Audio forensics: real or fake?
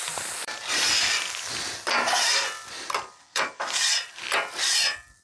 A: fake